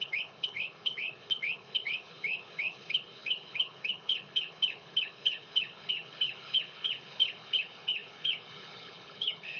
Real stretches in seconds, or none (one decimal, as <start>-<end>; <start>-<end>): none